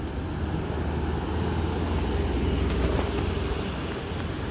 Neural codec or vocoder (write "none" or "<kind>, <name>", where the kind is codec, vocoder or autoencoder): none